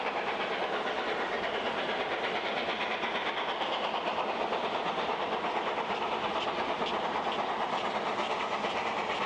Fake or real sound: fake